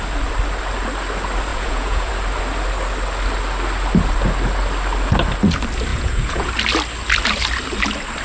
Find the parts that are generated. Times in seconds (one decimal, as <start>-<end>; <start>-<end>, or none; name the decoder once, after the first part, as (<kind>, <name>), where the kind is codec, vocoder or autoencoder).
1.5-2.1 (vocoder, Vocos); 5.9-6.5